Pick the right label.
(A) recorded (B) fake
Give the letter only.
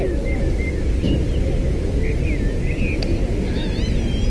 A